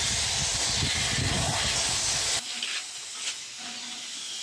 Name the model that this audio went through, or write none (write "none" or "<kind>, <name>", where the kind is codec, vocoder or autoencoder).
none